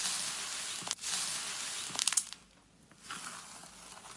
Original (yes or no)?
yes